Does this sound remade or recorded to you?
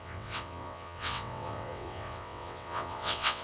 remade